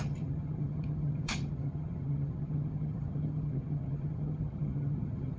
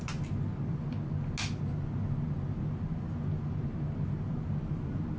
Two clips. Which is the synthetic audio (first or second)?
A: first